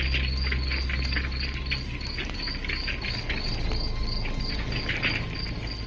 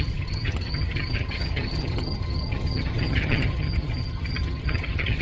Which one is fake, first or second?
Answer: second